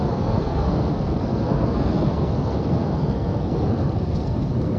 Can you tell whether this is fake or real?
fake